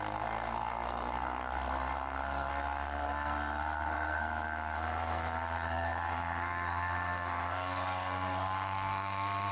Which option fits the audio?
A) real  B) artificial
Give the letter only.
B